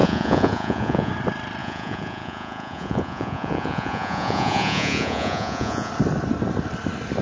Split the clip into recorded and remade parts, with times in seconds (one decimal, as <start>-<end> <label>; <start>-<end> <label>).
0.0-1.1 remade; 1.1-1.6 recorded; 1.6-5.9 remade; 5.9-7.2 recorded